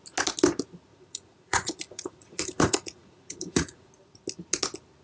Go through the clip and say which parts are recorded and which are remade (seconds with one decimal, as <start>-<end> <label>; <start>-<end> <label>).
0.0-0.9 recorded; 0.9-3.9 remade; 3.9-5.0 recorded